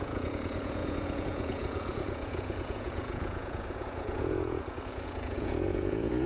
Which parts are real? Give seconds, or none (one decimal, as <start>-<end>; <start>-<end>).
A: none